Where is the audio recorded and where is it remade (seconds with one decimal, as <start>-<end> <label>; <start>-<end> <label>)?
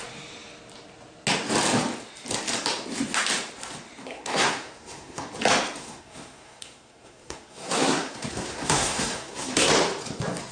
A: 0.0-4.0 recorded; 4.0-5.3 remade; 5.3-5.8 recorded; 5.8-9.7 remade; 9.7-10.5 recorded